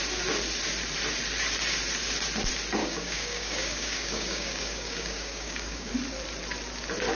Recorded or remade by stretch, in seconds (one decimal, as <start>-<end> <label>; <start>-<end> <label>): 0.0-2.8 recorded; 2.8-5.9 remade; 5.9-7.1 recorded